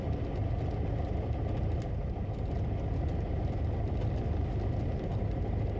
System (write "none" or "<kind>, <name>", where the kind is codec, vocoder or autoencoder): none